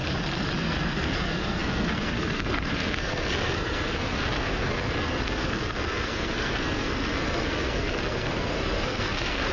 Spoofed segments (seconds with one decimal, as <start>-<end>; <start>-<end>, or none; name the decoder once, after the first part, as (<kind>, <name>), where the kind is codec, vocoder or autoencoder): 0.6-9.5 (codec, SNAC)